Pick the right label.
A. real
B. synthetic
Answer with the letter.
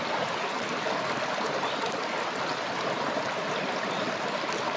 A